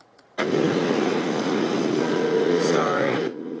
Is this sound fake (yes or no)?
yes